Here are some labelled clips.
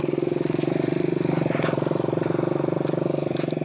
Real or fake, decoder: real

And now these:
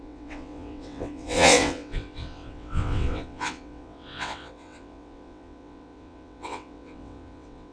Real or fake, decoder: fake, vocoder, WaveNeXt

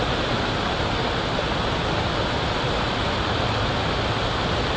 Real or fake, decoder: real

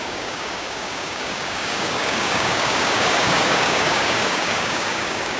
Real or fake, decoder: fake, codec, DAC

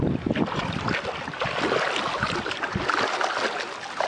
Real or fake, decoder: real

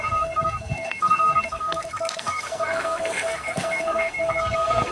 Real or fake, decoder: fake, codec, SNAC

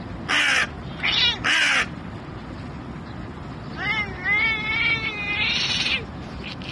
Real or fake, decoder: real